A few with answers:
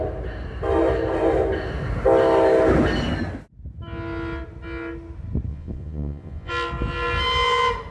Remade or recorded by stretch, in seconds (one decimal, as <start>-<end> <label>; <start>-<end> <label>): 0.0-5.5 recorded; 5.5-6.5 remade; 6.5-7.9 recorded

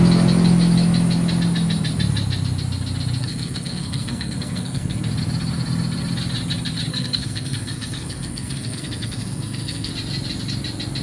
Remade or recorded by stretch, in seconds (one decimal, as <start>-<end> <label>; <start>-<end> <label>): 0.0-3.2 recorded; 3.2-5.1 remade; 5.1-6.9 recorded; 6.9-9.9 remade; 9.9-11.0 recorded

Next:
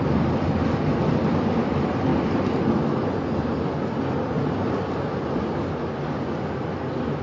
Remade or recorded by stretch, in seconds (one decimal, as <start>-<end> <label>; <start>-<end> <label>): 0.0-7.2 recorded

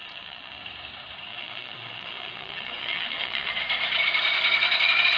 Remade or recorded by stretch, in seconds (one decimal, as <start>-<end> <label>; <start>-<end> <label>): 0.0-0.6 remade; 0.6-1.3 recorded; 1.3-3.5 remade; 3.5-5.2 recorded

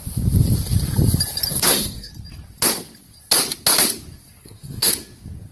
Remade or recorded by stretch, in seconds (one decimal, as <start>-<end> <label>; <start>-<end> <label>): 0.0-1.5 recorded; 1.5-2.1 remade; 2.1-4.4 recorded; 4.4-4.9 remade; 4.9-5.5 recorded

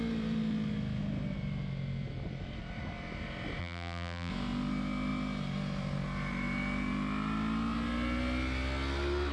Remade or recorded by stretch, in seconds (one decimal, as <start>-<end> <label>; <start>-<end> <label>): 0.0-3.6 recorded; 3.6-4.3 remade; 4.3-9.3 recorded

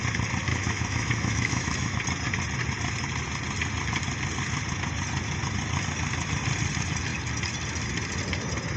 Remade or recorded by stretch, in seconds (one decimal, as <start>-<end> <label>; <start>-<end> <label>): 0.0-0.5 recorded; 0.5-2.0 remade; 2.0-8.8 recorded

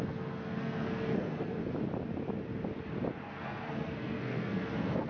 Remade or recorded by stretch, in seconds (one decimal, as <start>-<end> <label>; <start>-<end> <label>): 0.0-1.6 remade; 1.6-3.3 recorded; 3.3-5.1 remade